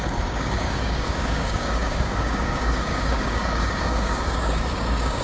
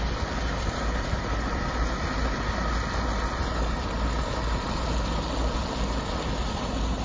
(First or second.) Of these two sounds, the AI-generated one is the first